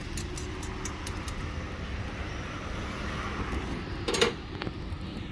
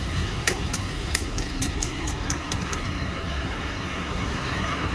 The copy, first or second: second